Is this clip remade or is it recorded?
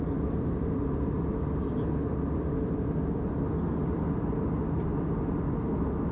recorded